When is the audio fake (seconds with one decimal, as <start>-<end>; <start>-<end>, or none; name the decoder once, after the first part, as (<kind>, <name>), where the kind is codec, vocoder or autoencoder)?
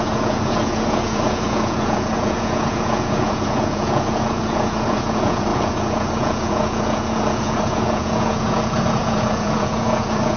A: 0.0-10.4 (vocoder, Vocos)